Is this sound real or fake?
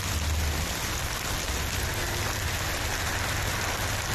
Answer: real